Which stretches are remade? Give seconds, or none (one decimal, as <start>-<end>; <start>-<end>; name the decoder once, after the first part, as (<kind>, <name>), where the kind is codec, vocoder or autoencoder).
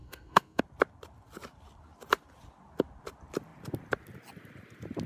0.0-0.6 (codec, SNAC)